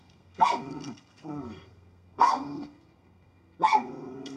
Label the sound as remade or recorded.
remade